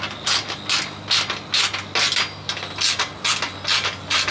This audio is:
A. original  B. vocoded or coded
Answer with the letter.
A